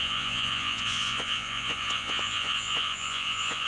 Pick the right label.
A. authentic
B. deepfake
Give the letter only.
B